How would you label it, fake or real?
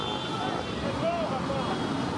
real